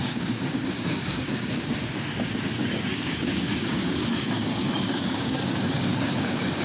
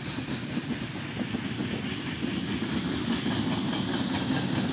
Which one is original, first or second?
second